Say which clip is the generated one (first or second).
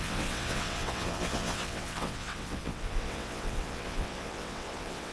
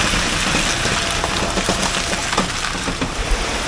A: first